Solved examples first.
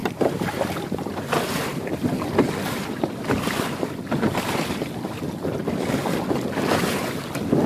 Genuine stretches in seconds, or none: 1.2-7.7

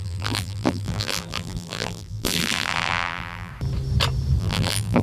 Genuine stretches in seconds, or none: 3.5-4.4

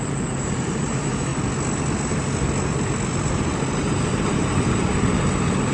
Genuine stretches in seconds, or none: 1.3-3.8

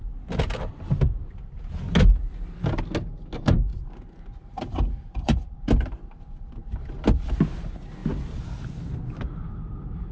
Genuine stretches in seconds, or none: 0.0-3.7; 6.5-10.1

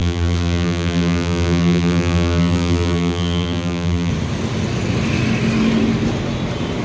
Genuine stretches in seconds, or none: 4.1-6.8